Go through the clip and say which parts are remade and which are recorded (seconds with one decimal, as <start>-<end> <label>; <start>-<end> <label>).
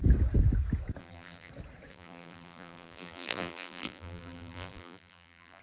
0.0-1.0 recorded; 1.0-1.5 remade; 1.5-1.9 recorded; 1.9-5.6 remade